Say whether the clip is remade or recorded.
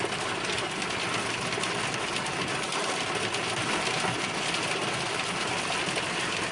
recorded